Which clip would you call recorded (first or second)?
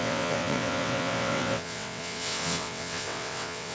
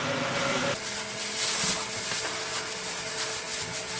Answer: second